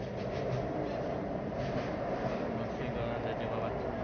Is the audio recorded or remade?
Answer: recorded